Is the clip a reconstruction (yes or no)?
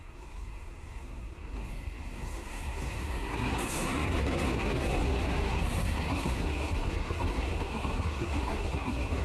yes